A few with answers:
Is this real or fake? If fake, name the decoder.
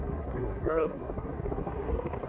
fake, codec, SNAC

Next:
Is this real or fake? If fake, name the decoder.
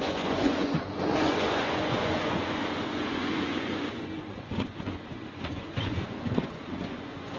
fake, vocoder, Vocos